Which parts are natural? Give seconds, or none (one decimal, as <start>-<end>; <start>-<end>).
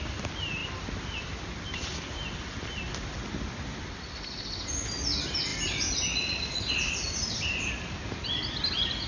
0.0-9.1